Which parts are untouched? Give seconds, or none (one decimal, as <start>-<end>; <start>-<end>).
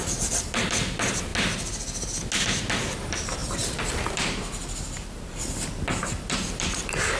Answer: 1.3-2.7